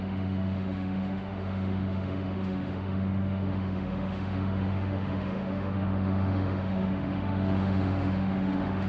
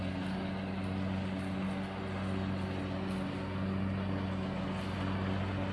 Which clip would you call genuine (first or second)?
second